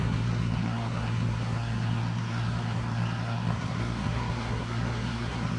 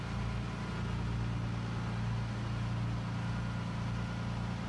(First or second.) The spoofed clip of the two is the first